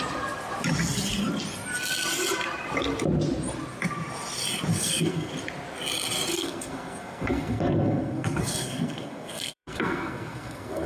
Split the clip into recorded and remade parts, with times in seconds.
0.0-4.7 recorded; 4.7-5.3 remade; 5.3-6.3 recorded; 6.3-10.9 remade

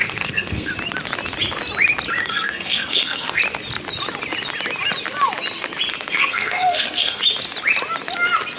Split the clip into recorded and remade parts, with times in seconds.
0.0-0.7 remade; 0.7-2.2 recorded; 2.2-3.4 remade; 3.4-5.9 recorded; 5.9-7.2 remade; 7.2-8.6 recorded

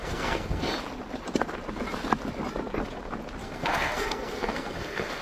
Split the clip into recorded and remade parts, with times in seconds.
0.0-0.7 remade; 0.7-3.4 recorded; 3.4-5.2 remade

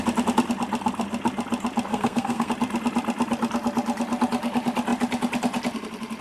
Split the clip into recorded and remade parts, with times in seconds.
0.0-1.9 recorded; 1.9-2.5 remade; 2.5-6.2 recorded

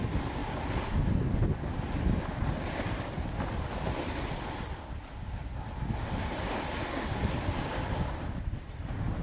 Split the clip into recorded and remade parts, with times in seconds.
0.0-9.2 recorded

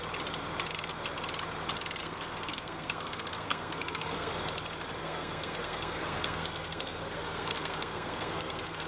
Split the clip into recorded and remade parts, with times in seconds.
0.0-2.0 recorded; 2.0-4.3 remade; 4.3-5.0 recorded; 5.0-8.9 remade